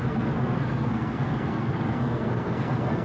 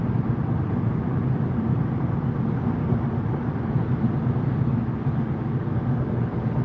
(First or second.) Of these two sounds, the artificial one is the first